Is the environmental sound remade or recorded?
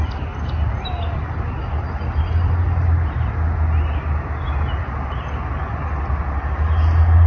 recorded